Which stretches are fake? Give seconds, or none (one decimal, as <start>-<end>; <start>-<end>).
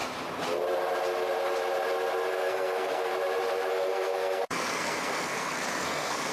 2.3-3.1; 3.7-6.3